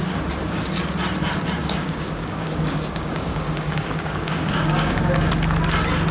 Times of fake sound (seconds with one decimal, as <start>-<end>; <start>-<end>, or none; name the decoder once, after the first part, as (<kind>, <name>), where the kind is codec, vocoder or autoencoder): 1.6-5.3 (codec, DAC)